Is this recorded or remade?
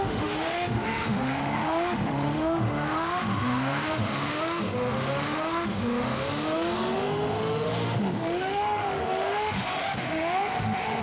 remade